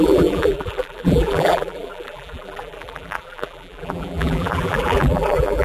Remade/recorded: remade